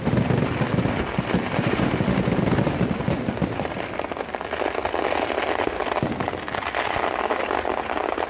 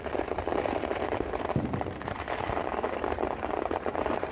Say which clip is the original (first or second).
first